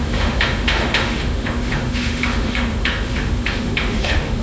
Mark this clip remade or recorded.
remade